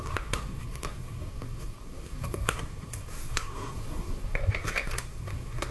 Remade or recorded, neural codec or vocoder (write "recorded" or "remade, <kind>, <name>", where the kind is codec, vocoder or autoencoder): remade, codec, SNAC